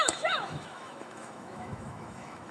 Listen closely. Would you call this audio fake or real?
fake